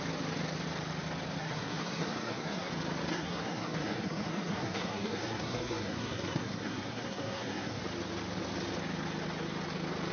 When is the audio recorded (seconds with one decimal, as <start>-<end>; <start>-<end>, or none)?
0.0-1.4; 2.7-3.1; 7.8-10.1